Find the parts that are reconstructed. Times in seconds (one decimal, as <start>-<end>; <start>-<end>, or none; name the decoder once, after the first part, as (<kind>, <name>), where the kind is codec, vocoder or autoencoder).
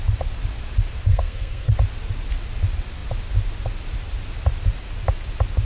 1.1-1.7 (codec, SNAC)